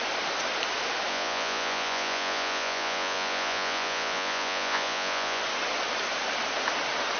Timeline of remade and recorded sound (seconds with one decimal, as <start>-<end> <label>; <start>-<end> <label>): 0.0-1.1 recorded; 1.1-5.4 remade; 5.4-7.2 recorded